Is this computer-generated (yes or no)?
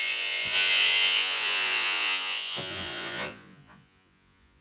yes